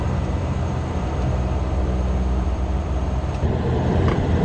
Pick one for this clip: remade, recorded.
remade